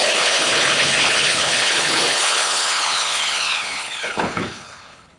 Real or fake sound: fake